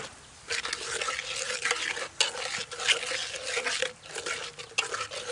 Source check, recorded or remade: recorded